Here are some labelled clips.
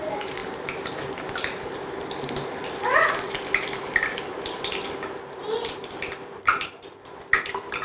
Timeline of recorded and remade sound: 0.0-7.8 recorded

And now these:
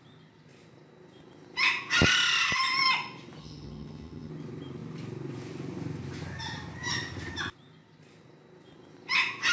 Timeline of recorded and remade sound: 0.0-3.4 recorded; 3.4-4.3 remade; 4.3-9.5 recorded

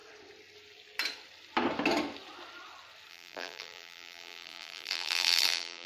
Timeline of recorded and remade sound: 0.0-3.1 recorded; 3.1-5.9 remade

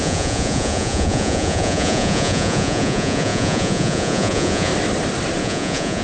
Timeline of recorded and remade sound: 0.0-4.7 remade; 4.7-5.4 recorded; 5.4-6.0 remade